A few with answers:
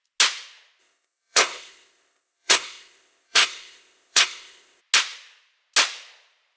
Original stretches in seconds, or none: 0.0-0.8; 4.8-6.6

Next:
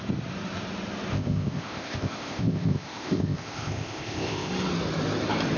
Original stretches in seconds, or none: 0.0-1.1; 4.5-5.6

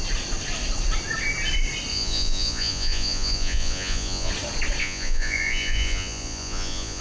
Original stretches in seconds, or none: 0.0-1.9; 4.3-4.8

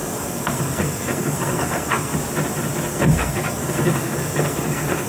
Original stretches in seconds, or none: 2.1-2.9

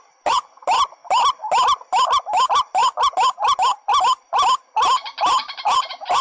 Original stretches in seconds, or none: 0.0-6.2